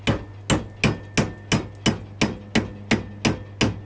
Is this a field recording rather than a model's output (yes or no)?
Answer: yes